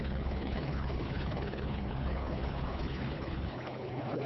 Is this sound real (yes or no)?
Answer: no